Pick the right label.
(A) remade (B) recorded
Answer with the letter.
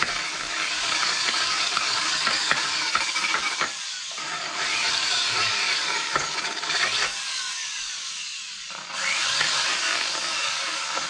A